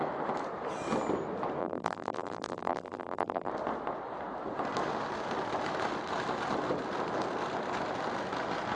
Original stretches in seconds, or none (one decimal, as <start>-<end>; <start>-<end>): 0.0-1.6; 3.5-8.8